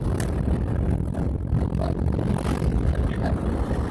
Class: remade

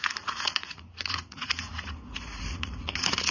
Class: remade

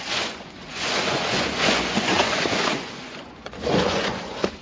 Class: remade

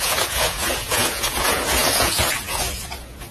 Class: remade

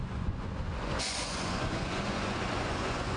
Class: remade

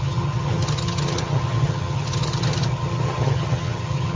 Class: remade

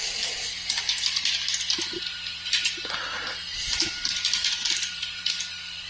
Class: recorded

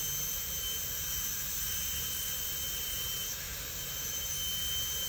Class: recorded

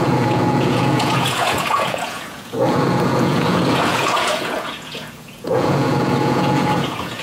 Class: remade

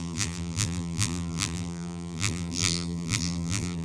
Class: remade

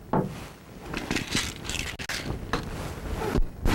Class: recorded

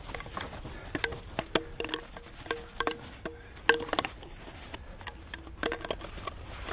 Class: recorded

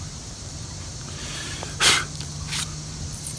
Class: remade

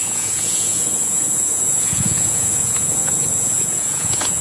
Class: remade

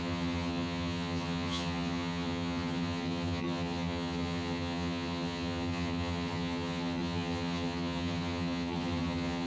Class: remade